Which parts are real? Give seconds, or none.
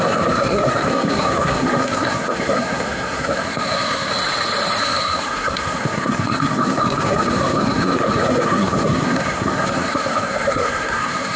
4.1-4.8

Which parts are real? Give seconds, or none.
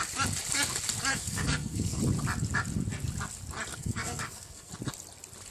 0.0-1.1; 2.0-3.7; 4.7-5.5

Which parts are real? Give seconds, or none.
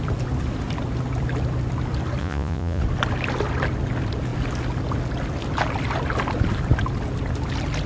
0.0-2.2; 2.8-7.9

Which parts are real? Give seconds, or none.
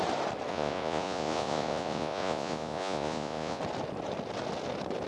0.0-0.5; 3.6-5.1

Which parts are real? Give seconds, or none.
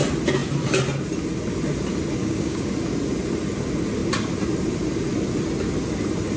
0.0-2.2; 2.7-6.4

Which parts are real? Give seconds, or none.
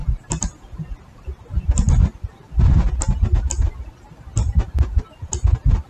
0.0-5.9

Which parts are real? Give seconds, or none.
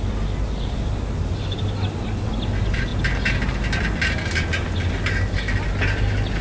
0.0-6.4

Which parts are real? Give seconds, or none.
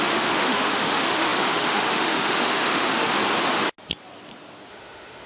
3.2-4.7